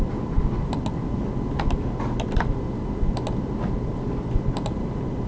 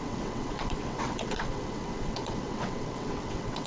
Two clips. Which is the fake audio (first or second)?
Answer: second